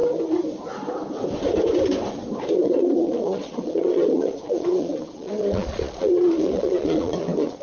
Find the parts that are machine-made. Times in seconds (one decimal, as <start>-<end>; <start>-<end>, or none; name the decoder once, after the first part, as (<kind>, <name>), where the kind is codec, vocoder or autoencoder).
2.5-7.6 (vocoder, Vocos)